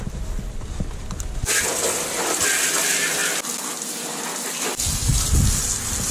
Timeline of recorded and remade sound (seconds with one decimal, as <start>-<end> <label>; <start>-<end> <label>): 0.0-6.1 recorded